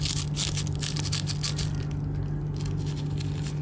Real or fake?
real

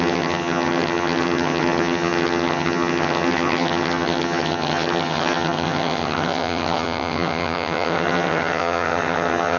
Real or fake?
fake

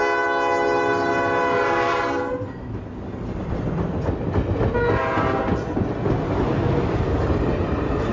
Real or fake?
real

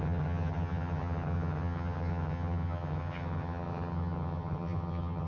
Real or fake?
fake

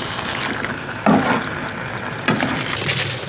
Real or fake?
real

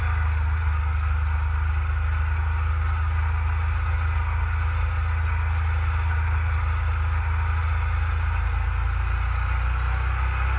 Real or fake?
real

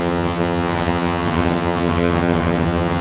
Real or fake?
fake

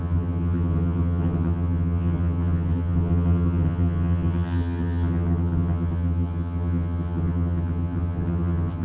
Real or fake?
fake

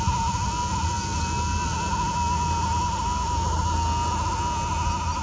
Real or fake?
real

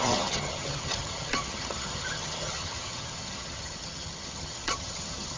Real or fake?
fake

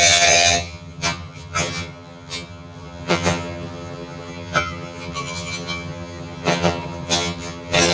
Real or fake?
fake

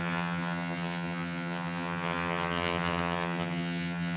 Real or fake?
fake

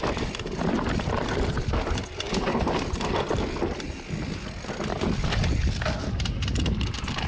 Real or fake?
real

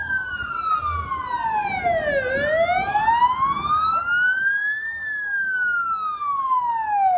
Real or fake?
real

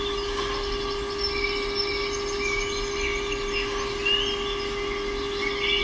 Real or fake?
real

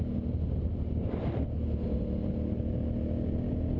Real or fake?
real